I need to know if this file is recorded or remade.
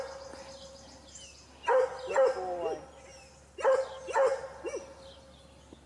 recorded